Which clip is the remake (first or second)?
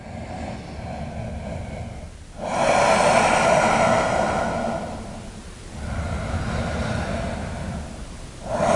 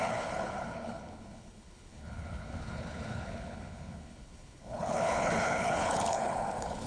second